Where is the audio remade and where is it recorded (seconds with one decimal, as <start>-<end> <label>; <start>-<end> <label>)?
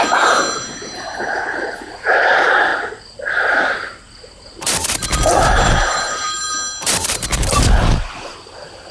0.0-2.7 remade; 2.7-4.6 recorded; 4.6-8.9 remade